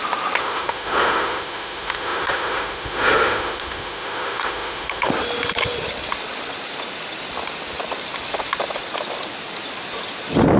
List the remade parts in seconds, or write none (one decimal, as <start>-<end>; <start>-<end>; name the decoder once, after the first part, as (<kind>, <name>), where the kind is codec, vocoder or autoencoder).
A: 0.4-5.1 (autoencoder, DAC-VAE)